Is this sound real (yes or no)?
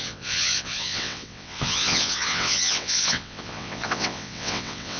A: no